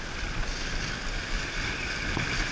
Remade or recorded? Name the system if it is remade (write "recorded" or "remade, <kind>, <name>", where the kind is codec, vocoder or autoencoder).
recorded